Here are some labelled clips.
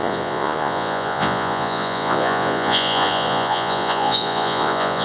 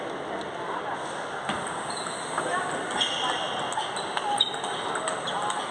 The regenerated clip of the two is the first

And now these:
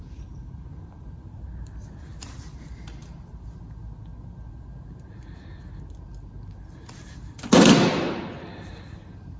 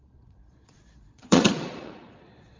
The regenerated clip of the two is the second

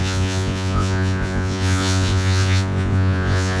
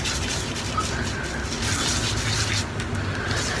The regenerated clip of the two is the first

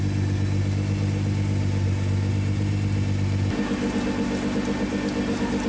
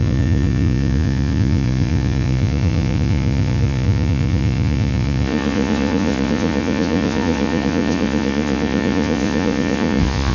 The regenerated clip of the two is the second